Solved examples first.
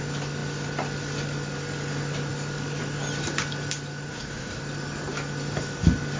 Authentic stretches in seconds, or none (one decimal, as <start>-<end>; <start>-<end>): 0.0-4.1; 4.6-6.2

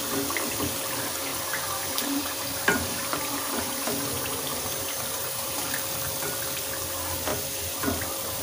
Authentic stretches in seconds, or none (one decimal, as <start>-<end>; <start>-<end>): 0.0-1.3; 3.5-4.5; 5.6-8.4

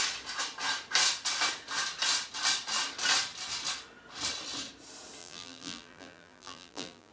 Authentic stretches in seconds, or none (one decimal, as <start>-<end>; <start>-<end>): 0.0-5.2

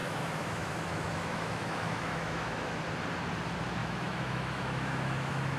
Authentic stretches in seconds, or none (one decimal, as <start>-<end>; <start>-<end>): 2.8-3.8